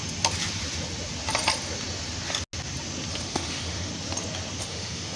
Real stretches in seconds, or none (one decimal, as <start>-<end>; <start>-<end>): 0.0-3.1; 3.9-4.6